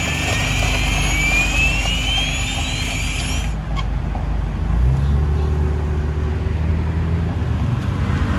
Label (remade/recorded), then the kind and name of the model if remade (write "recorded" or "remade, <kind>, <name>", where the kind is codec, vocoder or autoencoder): recorded